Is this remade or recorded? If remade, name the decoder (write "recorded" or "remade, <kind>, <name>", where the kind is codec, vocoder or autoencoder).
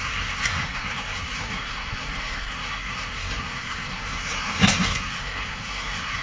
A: remade, codec, SNAC